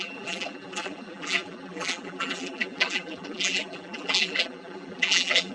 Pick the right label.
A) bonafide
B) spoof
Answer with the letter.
B